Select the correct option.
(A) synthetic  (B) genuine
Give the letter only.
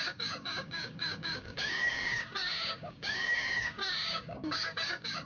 A